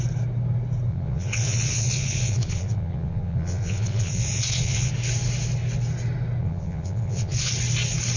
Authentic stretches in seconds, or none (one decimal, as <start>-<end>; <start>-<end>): 0.0-0.9; 4.9-6.4; 7.5-8.2